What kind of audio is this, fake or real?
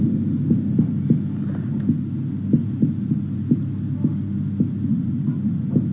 real